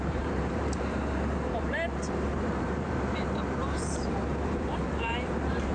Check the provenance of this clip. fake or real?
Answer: fake